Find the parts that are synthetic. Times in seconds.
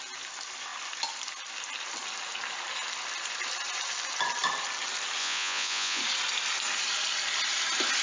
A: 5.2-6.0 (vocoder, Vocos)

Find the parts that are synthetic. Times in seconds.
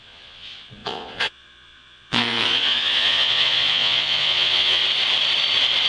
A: 0.0-4.8 (vocoder, Vocos)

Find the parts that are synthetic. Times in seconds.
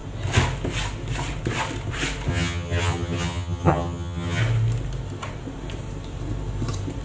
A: 2.3-4.4 (vocoder, HiFi-GAN)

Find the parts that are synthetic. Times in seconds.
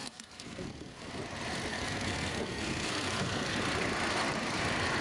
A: 0.0-1.1 (codec, SNAC); 1.7-3.6